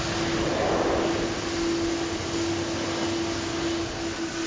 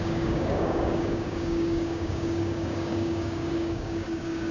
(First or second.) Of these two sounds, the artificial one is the second